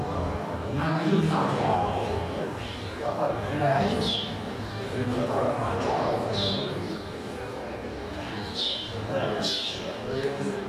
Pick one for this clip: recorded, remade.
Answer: remade